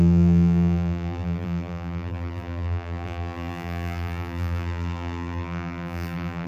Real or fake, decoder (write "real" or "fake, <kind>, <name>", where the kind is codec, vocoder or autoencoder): fake, vocoder, BigVGAN v2